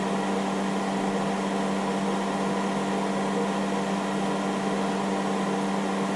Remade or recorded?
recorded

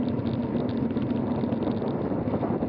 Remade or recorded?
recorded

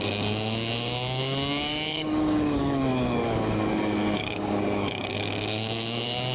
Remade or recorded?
remade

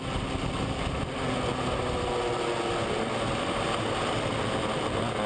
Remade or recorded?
recorded